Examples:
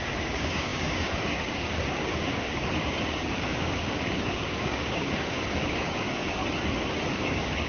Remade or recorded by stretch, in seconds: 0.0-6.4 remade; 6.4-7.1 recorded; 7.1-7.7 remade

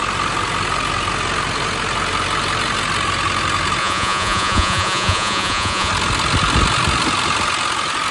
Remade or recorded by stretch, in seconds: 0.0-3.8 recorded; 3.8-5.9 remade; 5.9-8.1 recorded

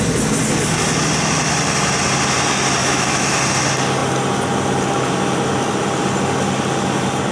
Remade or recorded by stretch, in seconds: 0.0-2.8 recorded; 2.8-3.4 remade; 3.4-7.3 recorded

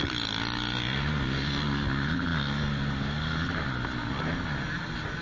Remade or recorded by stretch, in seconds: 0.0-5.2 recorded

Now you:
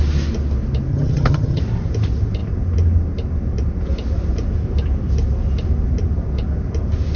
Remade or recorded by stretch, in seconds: 0.0-0.9 recorded; 0.9-1.6 remade; 1.6-7.2 recorded